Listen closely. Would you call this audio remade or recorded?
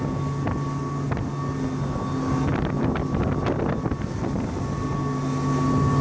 recorded